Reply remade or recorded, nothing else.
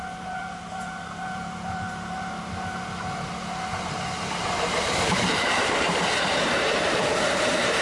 remade